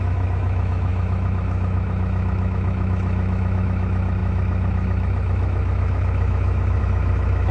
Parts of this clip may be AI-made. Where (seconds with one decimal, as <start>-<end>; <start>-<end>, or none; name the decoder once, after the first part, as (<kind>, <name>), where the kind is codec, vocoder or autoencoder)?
0.0-7.5 (autoencoder, DAC-VAE)